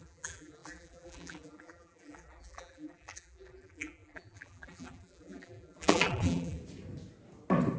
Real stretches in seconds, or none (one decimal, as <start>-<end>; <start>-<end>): 6.6-7.8